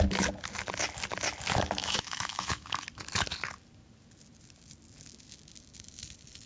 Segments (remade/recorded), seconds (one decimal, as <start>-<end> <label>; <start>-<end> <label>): 0.0-1.8 recorded; 1.8-2.7 remade; 2.7-6.5 recorded